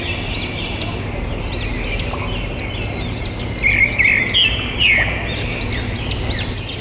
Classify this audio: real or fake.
real